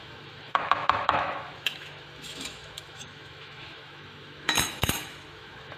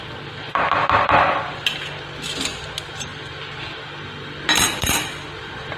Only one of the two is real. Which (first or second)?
second